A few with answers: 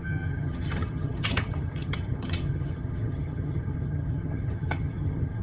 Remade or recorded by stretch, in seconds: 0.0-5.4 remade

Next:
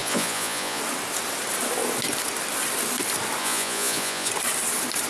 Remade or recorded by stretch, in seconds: 0.0-0.8 remade; 0.8-3.4 recorded; 3.4-4.3 remade; 4.3-5.1 recorded

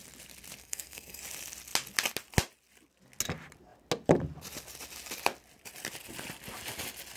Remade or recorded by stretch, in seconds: 0.0-0.6 recorded; 0.6-1.2 remade; 1.2-7.2 recorded

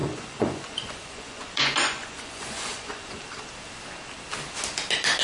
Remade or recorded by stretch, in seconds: 0.0-3.1 remade; 3.1-5.2 recorded

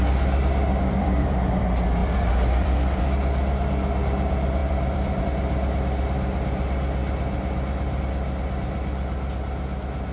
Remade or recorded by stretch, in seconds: 0.0-1.0 recorded; 1.0-1.6 remade; 1.6-2.0 recorded; 2.0-3.0 remade; 3.0-4.6 recorded; 4.6-5.2 remade; 5.2-10.1 recorded

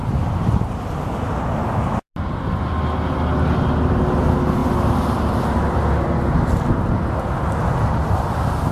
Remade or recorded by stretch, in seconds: 0.0-1.0 remade; 1.0-4.6 recorded; 4.6-6.7 remade; 6.7-8.7 recorded

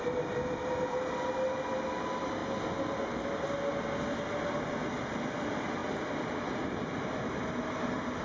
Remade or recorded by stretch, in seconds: 0.0-8.2 recorded